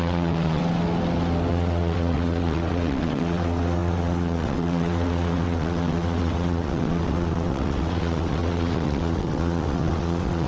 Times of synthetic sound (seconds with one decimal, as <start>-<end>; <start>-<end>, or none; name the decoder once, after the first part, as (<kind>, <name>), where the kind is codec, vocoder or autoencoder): 0.0-0.6 (vocoder, WaveNeXt); 1.5-10.5